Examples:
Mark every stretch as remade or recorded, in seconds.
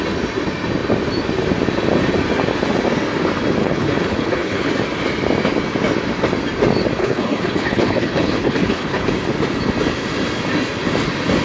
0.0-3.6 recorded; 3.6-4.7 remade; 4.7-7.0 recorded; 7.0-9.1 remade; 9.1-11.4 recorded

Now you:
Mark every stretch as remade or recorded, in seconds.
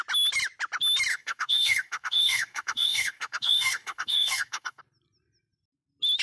0.0-1.1 recorded; 1.1-4.8 remade; 4.8-6.2 recorded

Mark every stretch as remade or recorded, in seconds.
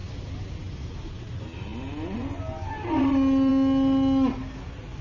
0.0-5.0 recorded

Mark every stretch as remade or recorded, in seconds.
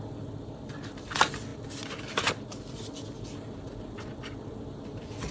0.0-5.3 recorded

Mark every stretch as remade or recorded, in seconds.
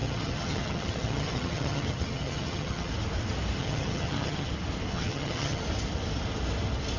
0.0-2.9 remade; 2.9-3.6 recorded; 3.6-4.5 remade; 4.5-4.9 recorded; 4.9-5.6 remade; 5.6-7.0 recorded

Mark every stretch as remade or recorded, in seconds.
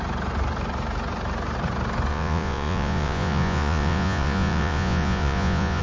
0.0-2.1 recorded; 2.1-5.8 remade